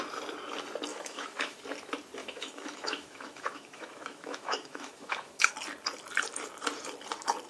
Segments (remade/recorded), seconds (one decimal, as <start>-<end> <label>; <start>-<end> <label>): 0.0-0.9 recorded; 0.9-1.6 remade; 1.6-2.2 recorded; 2.2-5.5 remade; 5.5-7.5 recorded